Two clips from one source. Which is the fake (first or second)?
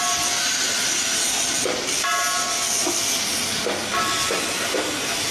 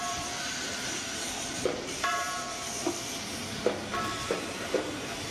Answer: second